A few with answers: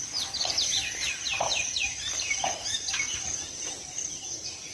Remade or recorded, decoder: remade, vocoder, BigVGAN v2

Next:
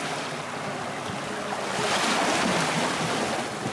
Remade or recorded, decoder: recorded